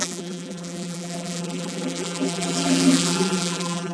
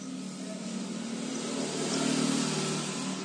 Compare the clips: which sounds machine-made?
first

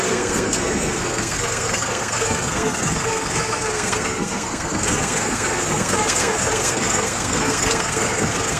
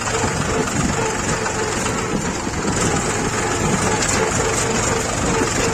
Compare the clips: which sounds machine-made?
first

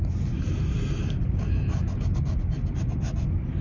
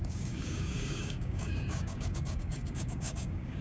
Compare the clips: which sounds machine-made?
second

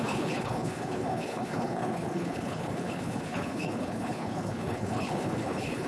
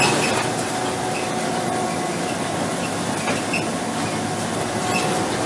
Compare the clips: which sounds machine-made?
first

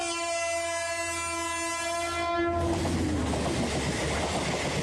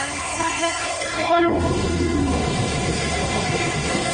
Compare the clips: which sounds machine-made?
second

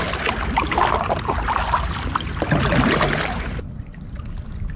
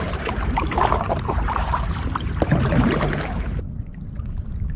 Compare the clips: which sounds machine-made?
second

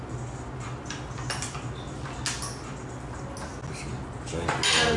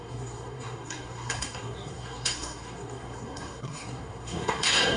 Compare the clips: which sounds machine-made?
second